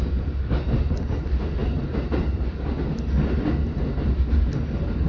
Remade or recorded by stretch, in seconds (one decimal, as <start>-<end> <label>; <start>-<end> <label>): 0.0-1.6 recorded; 1.6-2.5 remade; 2.5-5.1 recorded

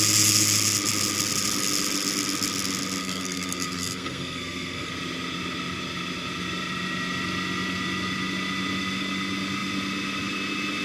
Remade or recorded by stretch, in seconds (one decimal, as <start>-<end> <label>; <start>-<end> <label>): 0.0-3.0 recorded; 3.0-4.9 remade; 4.9-10.8 recorded

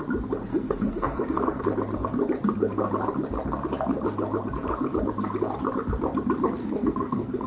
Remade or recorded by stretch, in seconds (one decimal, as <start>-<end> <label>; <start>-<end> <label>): 0.0-0.5 recorded; 0.5-1.6 remade; 1.6-6.6 recorded; 6.6-7.5 remade

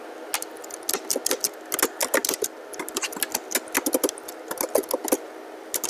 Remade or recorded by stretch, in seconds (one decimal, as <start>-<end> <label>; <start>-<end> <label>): 0.0-5.9 recorded

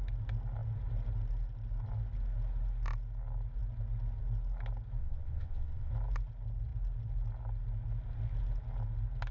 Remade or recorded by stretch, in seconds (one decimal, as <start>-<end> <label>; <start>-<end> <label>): 0.0-5.0 recorded; 5.0-5.9 remade; 5.9-9.3 recorded

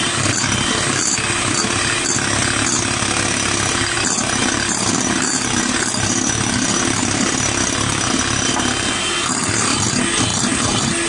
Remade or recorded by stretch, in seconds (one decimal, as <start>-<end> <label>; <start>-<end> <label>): 0.0-11.1 recorded

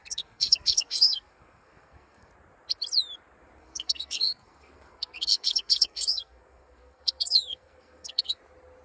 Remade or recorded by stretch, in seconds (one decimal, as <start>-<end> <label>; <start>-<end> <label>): 0.0-2.3 remade; 2.3-3.6 recorded; 3.6-8.4 remade; 8.4-8.8 recorded

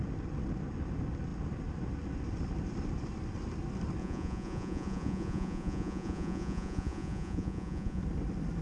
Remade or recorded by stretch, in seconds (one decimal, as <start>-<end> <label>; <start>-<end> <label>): 0.0-4.0 recorded; 4.0-8.0 remade; 8.0-8.6 recorded